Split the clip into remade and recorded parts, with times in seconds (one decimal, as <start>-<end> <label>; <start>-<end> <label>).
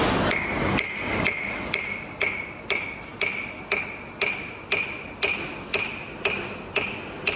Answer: 0.0-7.4 recorded